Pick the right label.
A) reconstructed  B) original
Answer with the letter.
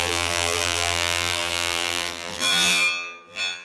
A